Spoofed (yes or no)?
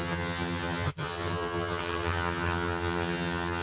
yes